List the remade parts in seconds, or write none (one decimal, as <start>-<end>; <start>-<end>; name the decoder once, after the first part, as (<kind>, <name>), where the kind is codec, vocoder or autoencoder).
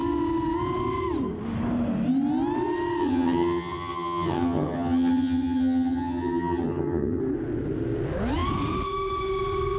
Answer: 3.0-7.2 (vocoder, HiFi-GAN)